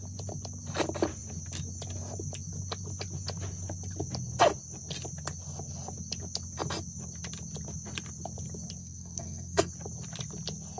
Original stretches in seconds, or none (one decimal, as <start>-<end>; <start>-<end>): 0.0-8.8; 9.7-10.8